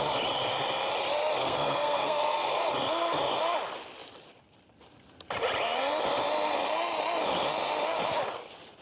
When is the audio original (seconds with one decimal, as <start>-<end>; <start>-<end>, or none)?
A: 0.0-1.4; 2.7-8.8